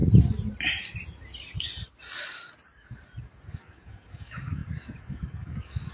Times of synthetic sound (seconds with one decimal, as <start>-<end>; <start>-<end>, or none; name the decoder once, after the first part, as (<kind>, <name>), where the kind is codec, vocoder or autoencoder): 3.5-5.9 (codec, DAC)